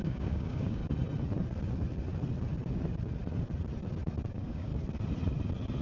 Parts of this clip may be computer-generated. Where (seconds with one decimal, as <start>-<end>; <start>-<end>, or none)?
0.0-0.8; 4.3-4.7